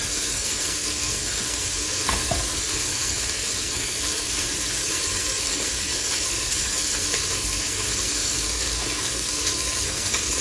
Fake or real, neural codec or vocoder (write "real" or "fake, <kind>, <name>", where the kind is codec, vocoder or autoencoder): fake, codec, SNAC